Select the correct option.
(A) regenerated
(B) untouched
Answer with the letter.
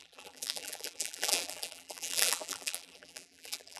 A